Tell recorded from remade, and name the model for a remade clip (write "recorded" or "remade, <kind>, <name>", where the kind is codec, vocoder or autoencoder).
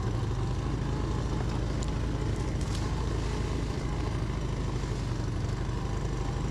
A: recorded